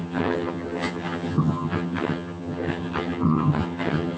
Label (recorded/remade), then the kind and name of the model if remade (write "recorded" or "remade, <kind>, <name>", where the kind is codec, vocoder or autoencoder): remade, vocoder, HiFi-GAN